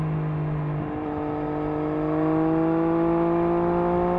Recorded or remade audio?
recorded